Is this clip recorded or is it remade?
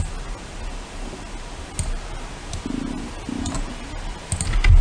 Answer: recorded